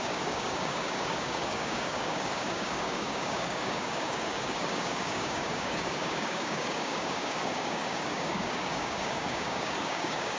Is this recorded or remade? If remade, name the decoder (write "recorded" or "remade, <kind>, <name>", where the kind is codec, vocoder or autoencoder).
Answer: remade, codec, DAC